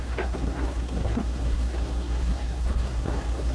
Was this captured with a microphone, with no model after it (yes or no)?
no